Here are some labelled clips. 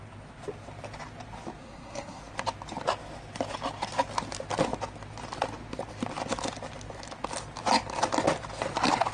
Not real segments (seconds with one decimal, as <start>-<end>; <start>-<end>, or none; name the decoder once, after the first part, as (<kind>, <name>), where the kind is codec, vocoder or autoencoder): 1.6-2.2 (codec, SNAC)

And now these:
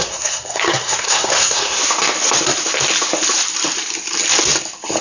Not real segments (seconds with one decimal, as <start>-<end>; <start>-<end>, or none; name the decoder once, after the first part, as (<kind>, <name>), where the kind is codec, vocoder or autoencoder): 0.0-1.8 (codec, SNAC)

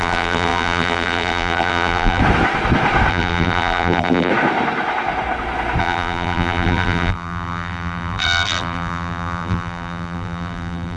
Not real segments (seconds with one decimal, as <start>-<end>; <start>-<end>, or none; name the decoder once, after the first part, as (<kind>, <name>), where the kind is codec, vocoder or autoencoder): 0.0-2.2 (vocoder, BigVGAN v2); 3.1-4.3; 5.8-11.0

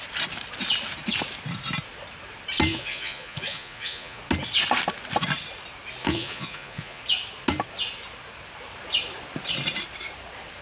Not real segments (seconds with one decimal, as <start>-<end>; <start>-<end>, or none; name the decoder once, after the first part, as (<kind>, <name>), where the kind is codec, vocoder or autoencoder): 2.7-4.2 (vocoder, Vocos); 6.0-7.0

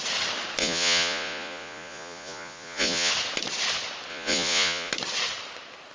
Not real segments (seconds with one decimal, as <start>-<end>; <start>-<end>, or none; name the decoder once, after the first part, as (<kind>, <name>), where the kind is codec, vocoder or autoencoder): 0.6-3.1 (vocoder, Vocos); 4.1-4.9

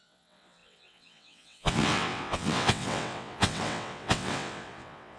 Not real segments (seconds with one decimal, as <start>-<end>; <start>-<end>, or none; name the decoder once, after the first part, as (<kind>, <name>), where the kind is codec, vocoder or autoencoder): 0.0-5.2 (vocoder, WaveNeXt)

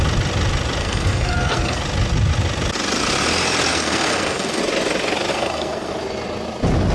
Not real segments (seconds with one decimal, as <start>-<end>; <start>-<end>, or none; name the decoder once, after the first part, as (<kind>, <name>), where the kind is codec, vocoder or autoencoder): 0.8-1.8 (codec, SNAC); 3.7-4.6; 5.3-5.9